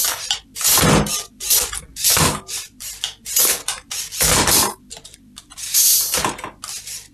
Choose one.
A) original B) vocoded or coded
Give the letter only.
B